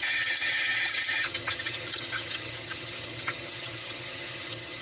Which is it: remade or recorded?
remade